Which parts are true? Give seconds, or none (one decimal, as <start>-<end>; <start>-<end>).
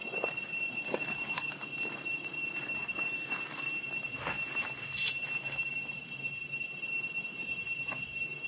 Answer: 2.4-8.5